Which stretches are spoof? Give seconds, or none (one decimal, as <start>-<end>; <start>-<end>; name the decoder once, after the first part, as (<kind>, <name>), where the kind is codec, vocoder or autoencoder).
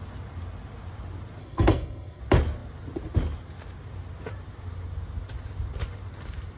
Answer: 1.4-2.2 (codec, SNAC)